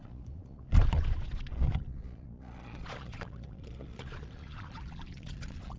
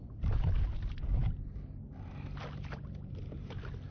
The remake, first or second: first